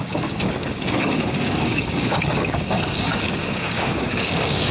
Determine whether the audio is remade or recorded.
remade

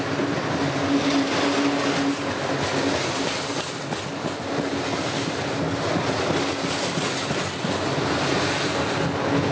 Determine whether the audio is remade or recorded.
recorded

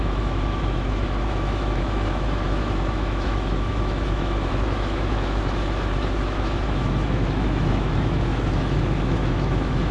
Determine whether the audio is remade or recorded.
remade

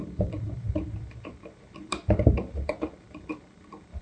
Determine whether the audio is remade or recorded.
remade